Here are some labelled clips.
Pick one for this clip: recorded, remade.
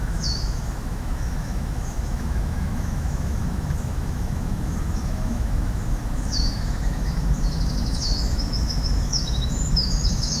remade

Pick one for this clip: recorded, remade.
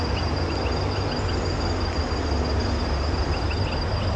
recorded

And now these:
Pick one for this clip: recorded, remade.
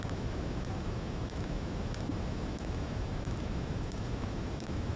remade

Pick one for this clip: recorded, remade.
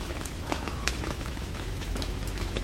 remade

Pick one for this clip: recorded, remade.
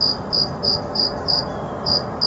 recorded